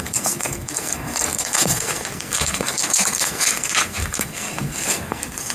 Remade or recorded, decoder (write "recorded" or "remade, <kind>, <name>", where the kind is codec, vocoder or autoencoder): remade, codec, SNAC